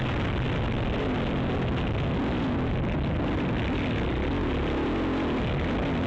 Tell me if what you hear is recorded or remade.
recorded